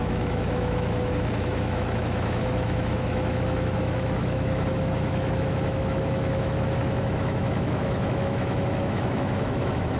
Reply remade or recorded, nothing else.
remade